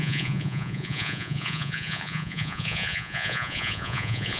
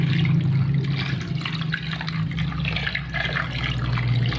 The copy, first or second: first